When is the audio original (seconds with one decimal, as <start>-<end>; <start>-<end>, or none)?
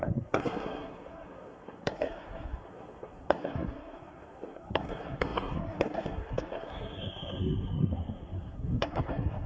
none